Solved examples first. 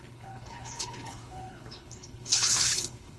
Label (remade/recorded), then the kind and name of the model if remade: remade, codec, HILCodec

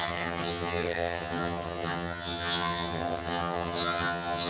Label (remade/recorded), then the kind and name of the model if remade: remade, vocoder, HiFi-GAN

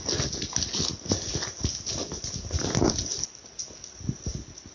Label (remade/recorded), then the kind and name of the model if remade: recorded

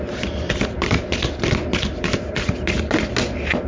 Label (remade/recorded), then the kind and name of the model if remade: recorded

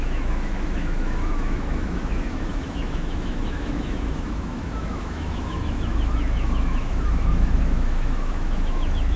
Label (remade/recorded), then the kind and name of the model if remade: remade, autoencoder, DAC-VAE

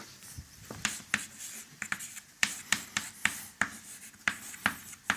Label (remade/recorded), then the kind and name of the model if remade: remade, vocoder, BigVGAN v2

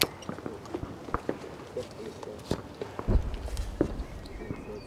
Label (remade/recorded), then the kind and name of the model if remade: recorded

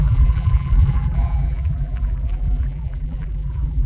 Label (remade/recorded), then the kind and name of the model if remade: remade, vocoder, BigVGAN v2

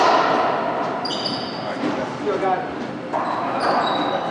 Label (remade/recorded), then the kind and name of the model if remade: recorded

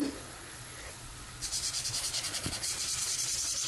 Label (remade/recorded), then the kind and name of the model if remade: remade, vocoder, Vocos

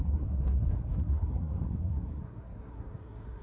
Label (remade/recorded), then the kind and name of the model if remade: remade, codec, SNAC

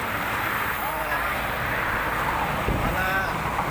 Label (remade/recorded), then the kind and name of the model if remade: remade, vocoder, BigVGAN v2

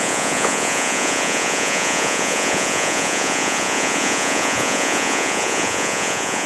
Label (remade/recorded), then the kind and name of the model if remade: remade, vocoder, Vocos